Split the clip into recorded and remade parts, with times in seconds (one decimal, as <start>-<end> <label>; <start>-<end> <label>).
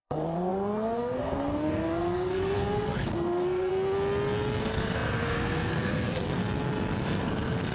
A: 0.0-3.7 remade; 3.7-4.6 recorded; 4.6-6.4 remade; 6.4-7.0 recorded; 7.0-7.7 remade